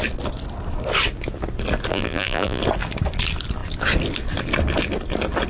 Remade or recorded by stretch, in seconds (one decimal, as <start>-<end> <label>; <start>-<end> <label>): 0.0-1.9 recorded; 1.9-2.6 remade; 2.6-5.5 recorded